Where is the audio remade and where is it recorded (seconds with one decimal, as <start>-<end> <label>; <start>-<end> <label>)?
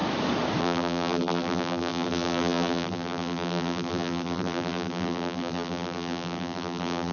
0.0-0.6 recorded; 0.6-7.1 remade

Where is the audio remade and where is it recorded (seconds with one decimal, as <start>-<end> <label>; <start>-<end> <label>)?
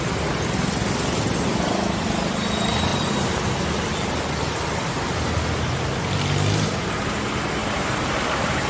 0.0-2.9 recorded; 2.9-3.4 remade; 3.4-7.6 recorded; 7.6-8.7 remade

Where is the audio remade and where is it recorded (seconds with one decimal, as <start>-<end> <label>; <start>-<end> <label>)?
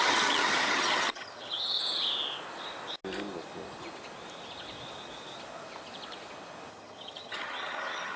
0.0-1.8 remade; 1.8-6.7 recorded; 6.7-8.2 remade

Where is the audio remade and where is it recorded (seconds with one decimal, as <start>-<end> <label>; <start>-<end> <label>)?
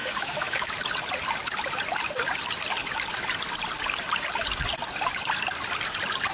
0.0-0.7 remade; 0.7-6.3 recorded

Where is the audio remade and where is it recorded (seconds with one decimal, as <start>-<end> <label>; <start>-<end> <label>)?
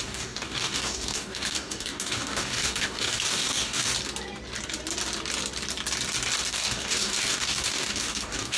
0.0-3.9 remade; 3.9-6.5 recorded; 6.5-8.6 remade